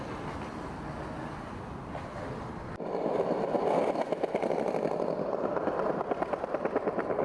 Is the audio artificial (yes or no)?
no